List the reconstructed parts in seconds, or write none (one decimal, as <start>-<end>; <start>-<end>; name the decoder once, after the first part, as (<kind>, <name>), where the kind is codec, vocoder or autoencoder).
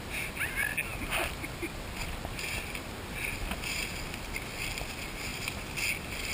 none